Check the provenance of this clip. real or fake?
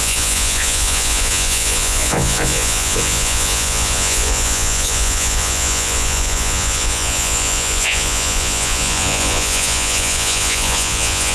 fake